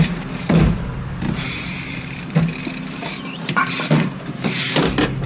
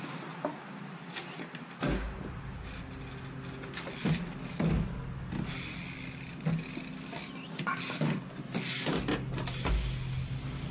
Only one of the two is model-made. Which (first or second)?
first